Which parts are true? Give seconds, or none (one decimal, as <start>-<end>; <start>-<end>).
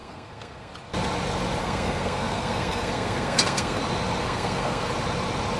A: 0.7-1.6; 3.8-4.2; 4.9-5.6